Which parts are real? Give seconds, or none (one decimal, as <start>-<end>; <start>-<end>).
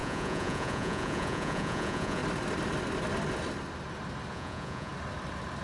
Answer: 2.2-4.3; 4.9-5.6